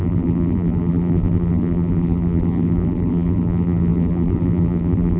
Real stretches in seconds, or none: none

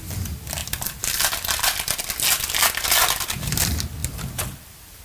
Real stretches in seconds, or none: 0.0-4.0